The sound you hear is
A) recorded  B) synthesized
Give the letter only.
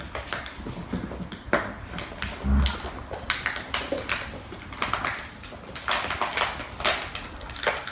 A